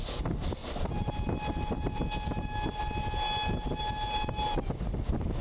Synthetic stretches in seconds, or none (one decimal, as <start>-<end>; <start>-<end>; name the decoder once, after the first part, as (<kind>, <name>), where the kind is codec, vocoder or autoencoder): none